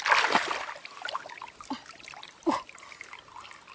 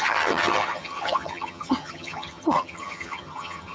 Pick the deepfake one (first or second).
second